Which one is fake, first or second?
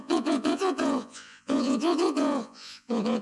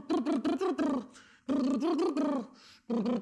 first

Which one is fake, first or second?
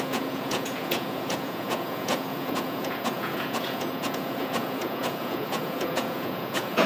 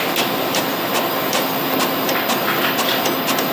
first